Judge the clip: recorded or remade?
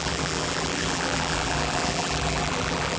remade